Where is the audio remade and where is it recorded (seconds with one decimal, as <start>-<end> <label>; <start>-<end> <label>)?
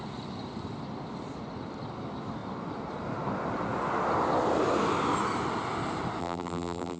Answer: 0.0-6.2 recorded; 6.2-7.0 remade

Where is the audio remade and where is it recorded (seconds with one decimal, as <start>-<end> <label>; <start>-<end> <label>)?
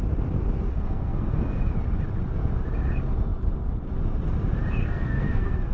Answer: 0.0-0.7 recorded; 0.7-1.7 remade; 1.7-4.8 recorded; 4.8-5.7 remade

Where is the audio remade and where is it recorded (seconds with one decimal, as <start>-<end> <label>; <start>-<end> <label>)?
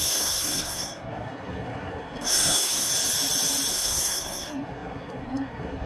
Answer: 0.0-2.9 remade; 2.9-3.7 recorded; 3.7-5.9 remade